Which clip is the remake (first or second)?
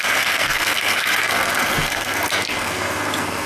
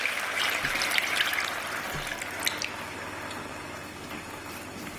first